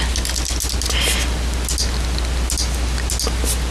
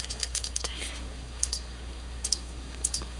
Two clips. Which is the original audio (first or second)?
first